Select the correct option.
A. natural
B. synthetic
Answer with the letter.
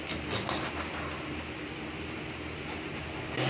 A